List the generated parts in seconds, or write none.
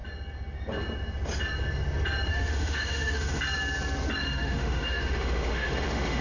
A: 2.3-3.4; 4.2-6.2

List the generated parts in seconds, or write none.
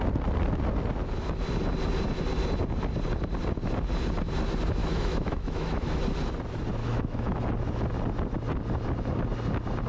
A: 4.8-6.0; 6.8-7.4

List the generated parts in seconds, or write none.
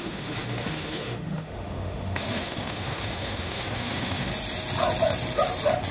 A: 0.0-4.3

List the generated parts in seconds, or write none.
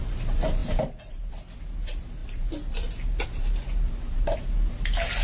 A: none